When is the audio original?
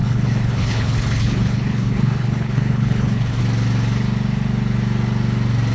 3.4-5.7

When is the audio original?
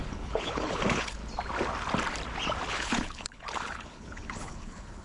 1.2-2.7